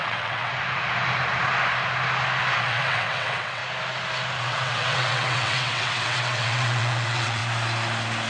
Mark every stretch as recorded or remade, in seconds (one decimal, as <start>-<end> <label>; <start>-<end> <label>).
0.0-0.5 remade; 0.5-2.6 recorded; 2.6-3.6 remade; 3.6-4.4 recorded; 4.4-7.4 remade; 7.4-8.3 recorded